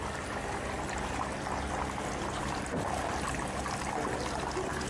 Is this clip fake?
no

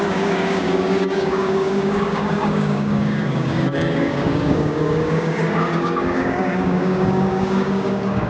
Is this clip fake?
yes